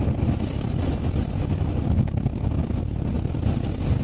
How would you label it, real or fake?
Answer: real